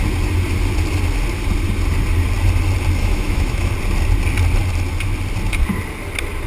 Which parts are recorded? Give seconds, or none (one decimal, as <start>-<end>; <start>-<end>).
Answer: 0.0-3.0; 3.7-6.5